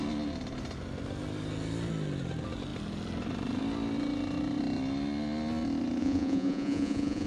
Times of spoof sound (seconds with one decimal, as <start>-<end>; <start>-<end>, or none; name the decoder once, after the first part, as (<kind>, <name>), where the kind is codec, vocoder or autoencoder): 6.0-7.3 (vocoder, Vocos)